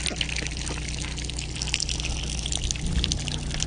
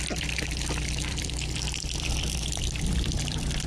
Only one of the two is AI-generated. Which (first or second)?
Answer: second